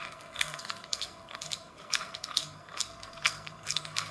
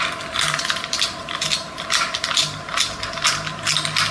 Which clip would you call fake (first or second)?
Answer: first